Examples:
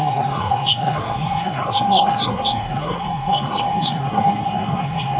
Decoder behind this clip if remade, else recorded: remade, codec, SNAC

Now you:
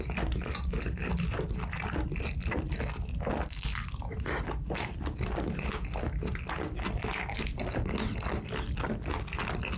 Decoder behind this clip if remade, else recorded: recorded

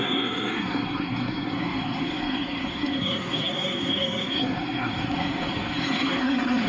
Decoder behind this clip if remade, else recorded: remade, codec, SNAC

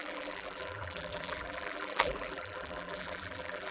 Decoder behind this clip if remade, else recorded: remade, vocoder, BigVGAN v2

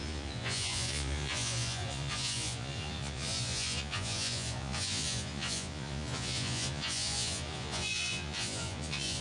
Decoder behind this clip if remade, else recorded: remade, vocoder, Vocos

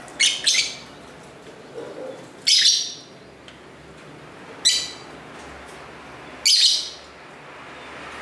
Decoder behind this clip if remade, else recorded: recorded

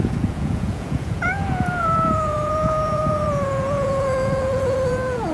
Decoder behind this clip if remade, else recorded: remade, vocoder, Vocos